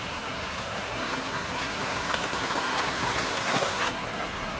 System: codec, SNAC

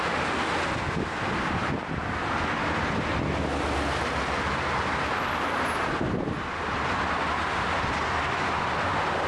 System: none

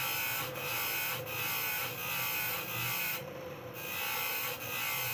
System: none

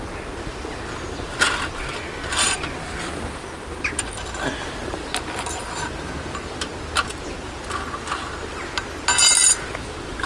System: none